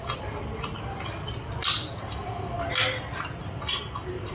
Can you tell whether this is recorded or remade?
recorded